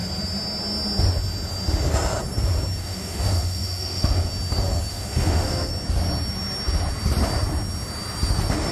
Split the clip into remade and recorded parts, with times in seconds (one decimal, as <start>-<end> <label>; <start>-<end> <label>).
0.0-2.8 recorded; 2.8-4.3 remade; 4.3-4.9 recorded; 4.9-5.7 remade; 5.7-8.7 recorded